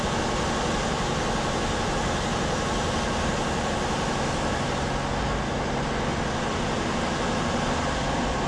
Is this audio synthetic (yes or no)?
no